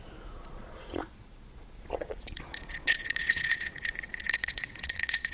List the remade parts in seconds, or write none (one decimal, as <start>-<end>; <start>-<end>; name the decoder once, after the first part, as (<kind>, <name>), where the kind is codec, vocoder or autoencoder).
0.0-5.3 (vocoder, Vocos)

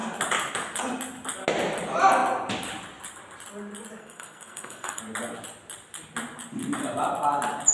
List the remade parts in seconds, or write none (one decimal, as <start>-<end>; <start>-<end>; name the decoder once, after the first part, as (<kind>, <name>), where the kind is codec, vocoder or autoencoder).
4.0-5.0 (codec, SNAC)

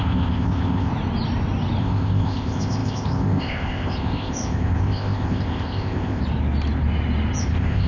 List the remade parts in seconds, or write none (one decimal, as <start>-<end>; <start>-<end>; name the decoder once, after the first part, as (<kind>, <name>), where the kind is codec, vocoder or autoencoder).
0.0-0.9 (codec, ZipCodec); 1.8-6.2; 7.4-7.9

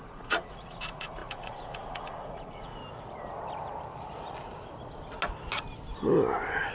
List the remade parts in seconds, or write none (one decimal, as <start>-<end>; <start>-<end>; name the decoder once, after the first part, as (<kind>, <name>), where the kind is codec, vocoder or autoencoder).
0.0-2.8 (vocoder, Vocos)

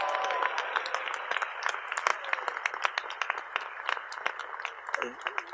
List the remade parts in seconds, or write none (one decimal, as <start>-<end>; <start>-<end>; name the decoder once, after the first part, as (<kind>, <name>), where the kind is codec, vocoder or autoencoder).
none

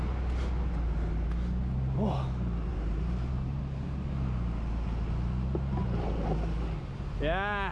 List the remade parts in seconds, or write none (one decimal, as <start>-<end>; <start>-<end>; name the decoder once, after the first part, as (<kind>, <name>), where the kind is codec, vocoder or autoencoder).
2.7-3.6 (vocoder, BigVGAN v2)

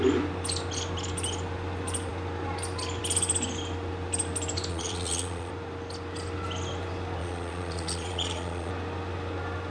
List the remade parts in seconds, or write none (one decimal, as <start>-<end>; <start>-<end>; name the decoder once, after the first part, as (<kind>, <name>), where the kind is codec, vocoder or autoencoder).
4.7-5.5 (vocoder, Vocos); 7.2-8.7

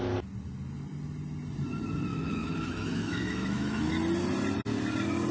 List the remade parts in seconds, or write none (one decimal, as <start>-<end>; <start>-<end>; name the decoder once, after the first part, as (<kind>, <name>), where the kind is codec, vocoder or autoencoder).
2.1-3.9 (autoencoder, DAC-VAE)